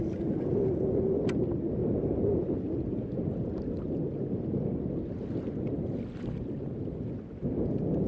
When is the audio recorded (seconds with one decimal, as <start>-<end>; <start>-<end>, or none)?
0.0-8.1